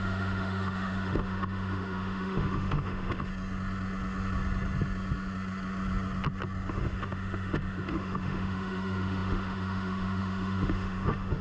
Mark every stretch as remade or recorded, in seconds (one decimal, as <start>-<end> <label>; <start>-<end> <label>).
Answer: 0.0-3.3 remade; 3.3-6.7 recorded; 6.7-11.4 remade